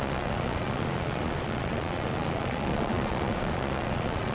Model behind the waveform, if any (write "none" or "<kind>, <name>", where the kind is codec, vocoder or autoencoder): vocoder, Vocos